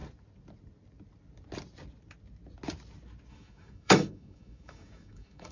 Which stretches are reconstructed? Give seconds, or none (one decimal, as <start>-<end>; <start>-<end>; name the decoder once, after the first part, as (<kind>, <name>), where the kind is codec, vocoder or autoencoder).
3.3-5.5 (autoencoder, DAC-VAE)